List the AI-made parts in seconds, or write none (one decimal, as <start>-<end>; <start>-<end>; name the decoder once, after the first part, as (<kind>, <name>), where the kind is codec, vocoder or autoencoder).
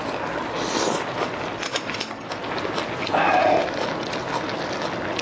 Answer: none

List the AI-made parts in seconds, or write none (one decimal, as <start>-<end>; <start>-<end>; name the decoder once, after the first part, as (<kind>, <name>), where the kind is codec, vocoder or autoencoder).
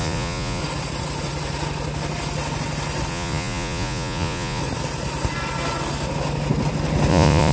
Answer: 0.0-0.6 (vocoder, Vocos); 3.1-4.6; 7.1-7.5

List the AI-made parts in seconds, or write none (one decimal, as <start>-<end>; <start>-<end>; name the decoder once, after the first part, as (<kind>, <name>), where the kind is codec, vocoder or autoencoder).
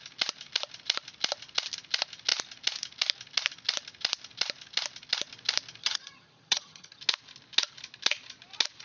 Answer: 5.8-7.0 (vocoder, HiFi-GAN)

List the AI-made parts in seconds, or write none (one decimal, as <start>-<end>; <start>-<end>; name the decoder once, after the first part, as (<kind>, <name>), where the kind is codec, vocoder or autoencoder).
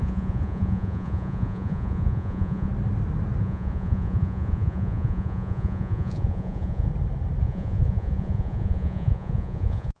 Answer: 0.0-2.7 (vocoder, Vocos); 3.4-6.9; 7.4-10.0